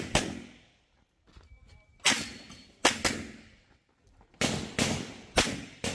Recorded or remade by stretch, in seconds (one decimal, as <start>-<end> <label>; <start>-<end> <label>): 0.0-5.9 recorded